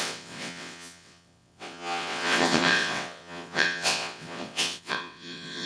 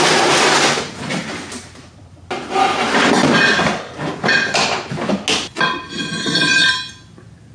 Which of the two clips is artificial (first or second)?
first